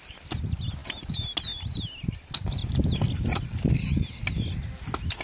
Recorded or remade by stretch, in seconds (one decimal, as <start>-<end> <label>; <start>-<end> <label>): 0.0-5.2 recorded